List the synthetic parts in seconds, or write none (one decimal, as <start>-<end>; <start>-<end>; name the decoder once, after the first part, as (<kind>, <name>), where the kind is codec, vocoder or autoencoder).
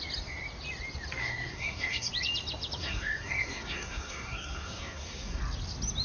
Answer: 1.2-2.1 (codec, SNAC); 2.8-5.4